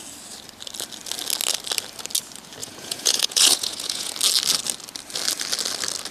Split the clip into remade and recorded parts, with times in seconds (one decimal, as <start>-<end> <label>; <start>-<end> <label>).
0.0-2.6 recorded; 2.6-4.1 remade; 4.1-6.1 recorded